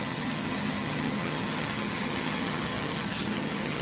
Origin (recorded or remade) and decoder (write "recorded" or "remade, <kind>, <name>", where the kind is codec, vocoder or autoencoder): remade, vocoder, HiFi-GAN